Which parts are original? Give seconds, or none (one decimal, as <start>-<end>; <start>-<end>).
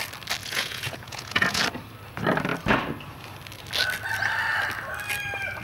0.0-0.4; 1.6-5.6